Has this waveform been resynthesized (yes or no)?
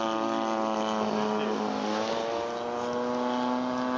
no